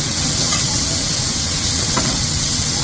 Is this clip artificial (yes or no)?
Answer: yes